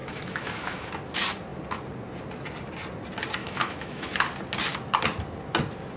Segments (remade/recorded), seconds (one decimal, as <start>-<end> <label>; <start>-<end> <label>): 0.0-0.9 remade; 0.9-3.4 recorded; 3.4-4.1 remade; 4.1-6.0 recorded